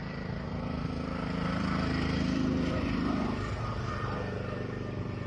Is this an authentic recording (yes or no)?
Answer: no